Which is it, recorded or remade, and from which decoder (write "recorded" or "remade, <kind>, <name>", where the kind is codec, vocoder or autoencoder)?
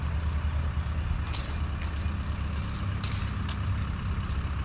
recorded